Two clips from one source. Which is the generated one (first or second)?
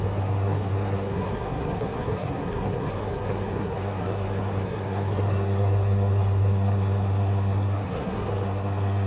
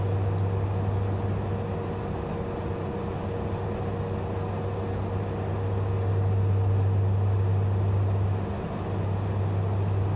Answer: first